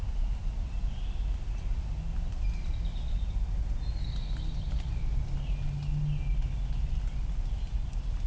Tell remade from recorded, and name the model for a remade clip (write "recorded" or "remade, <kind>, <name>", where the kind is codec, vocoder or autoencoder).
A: recorded